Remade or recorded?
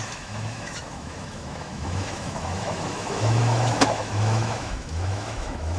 remade